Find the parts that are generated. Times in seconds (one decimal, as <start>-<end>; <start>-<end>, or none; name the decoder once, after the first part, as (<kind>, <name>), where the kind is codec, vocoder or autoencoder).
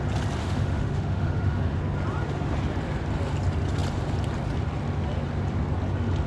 0.4-1.8 (autoencoder, DAC-VAE)